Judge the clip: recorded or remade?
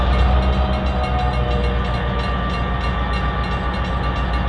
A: recorded